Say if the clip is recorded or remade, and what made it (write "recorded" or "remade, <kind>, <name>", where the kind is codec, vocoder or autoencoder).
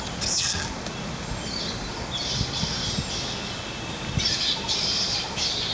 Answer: recorded